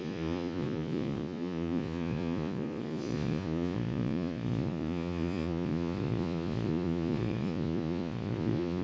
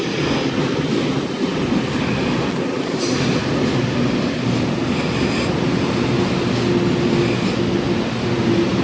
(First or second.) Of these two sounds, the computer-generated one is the first